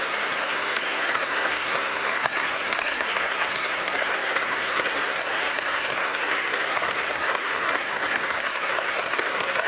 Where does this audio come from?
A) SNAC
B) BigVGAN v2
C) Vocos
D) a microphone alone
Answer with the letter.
A